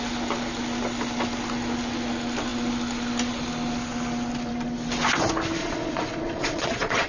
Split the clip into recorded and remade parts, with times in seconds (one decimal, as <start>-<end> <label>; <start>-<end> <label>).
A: 0.0-5.6 recorded; 5.6-7.1 remade